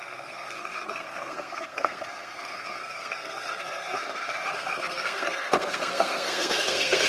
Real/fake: fake